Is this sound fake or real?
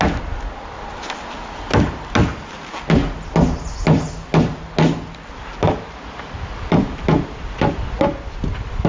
real